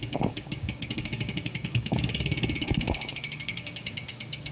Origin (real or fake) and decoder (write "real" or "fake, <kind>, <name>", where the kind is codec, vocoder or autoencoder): fake, codec, DAC